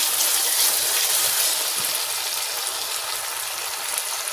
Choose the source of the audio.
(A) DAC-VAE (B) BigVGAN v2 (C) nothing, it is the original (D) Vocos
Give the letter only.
C